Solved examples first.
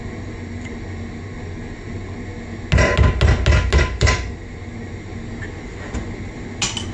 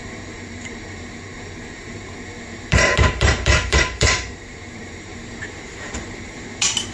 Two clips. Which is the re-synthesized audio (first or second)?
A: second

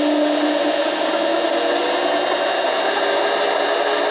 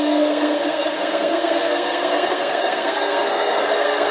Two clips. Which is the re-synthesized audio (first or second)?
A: second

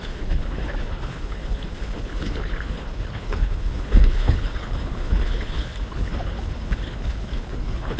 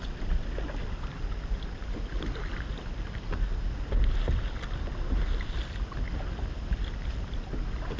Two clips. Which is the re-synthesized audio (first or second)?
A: first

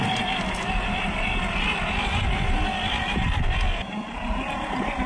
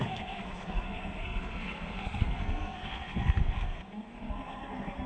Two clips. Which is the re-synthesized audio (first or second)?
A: second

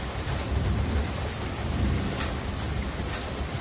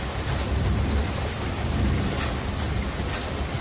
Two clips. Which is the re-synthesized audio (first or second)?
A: first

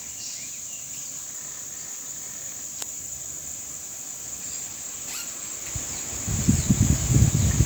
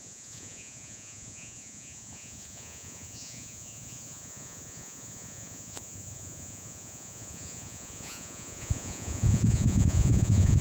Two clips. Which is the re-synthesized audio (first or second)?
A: second